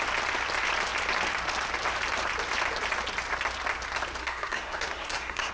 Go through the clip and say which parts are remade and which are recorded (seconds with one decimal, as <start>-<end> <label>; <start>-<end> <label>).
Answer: 0.0-4.2 recorded; 4.2-5.5 remade